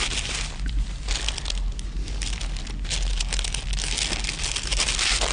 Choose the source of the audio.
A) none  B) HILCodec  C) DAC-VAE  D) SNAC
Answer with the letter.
A